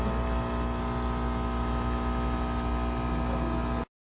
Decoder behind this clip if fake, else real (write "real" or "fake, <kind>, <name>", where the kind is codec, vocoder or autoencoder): real